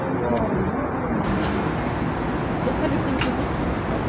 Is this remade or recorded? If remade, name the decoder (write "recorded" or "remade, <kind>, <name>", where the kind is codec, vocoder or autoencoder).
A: recorded